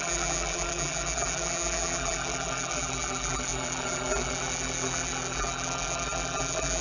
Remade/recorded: remade